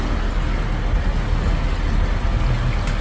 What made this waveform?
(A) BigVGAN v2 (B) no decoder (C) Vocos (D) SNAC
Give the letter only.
B